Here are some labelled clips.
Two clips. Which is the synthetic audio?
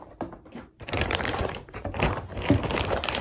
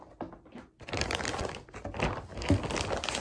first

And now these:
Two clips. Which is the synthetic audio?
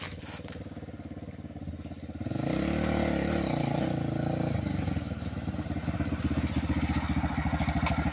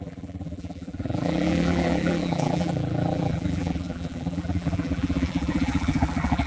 second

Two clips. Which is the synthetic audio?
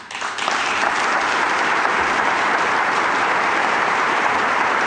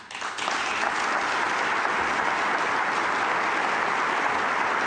first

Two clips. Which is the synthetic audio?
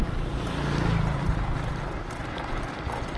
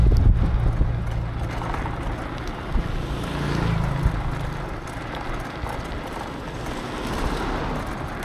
first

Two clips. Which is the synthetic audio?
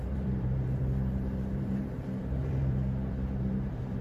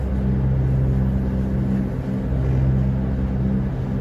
first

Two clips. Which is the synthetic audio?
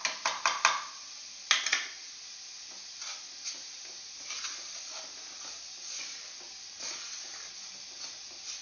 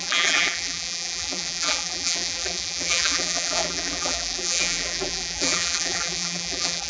second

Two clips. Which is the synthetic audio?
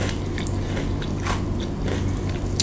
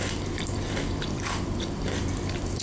second